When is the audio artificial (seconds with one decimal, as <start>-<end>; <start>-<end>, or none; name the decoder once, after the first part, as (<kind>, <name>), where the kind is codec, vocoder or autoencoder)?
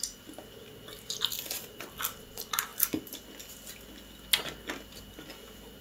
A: none